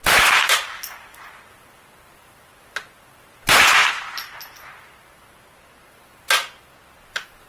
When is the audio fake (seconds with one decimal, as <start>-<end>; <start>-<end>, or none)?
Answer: none